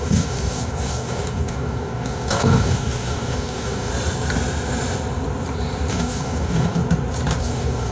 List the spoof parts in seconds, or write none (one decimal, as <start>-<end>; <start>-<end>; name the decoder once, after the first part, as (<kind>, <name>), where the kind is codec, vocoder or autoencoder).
0.0-3.9 (codec, DAC); 5.9-6.8; 7.4-7.9